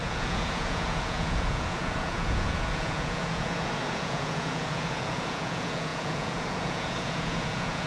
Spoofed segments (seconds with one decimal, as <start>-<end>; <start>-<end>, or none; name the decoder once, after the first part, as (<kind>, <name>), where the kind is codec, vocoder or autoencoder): 0.0-7.9 (vocoder, Vocos)